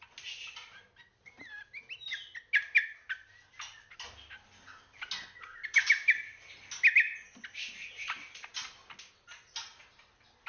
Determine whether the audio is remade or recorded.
recorded